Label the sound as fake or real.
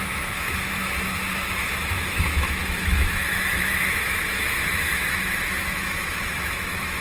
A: fake